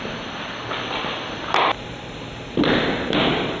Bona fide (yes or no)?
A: yes